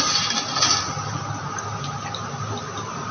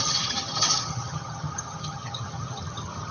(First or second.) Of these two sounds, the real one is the first